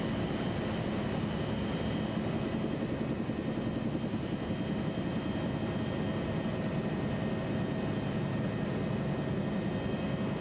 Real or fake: real